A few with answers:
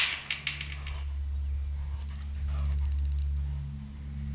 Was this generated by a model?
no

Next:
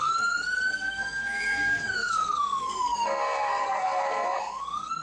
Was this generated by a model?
yes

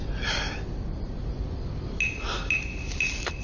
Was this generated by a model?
no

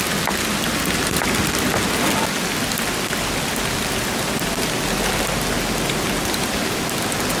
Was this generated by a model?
no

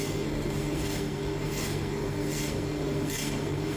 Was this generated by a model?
yes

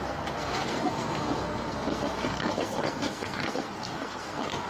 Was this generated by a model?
yes